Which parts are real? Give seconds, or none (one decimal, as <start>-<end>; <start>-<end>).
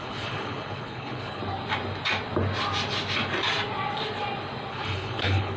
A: 1.4-4.7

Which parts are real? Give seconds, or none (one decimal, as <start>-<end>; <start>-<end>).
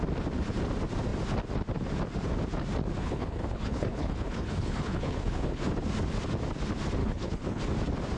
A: 0.0-3.0; 5.7-7.0; 7.6-8.2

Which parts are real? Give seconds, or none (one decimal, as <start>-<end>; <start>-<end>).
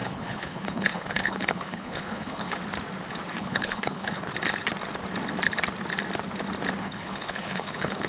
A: 2.6-3.3; 4.3-6.8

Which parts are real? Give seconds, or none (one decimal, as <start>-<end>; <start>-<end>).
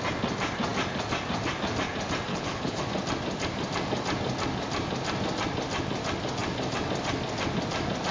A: 0.0-2.3; 2.8-8.1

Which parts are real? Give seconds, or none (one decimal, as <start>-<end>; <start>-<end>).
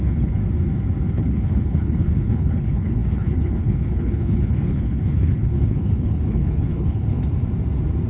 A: 0.4-1.1; 7.2-8.1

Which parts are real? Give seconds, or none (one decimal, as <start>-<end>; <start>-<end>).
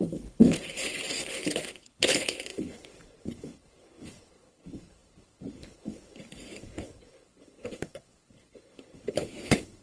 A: none